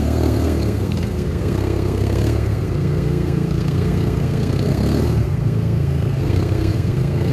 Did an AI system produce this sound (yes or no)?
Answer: yes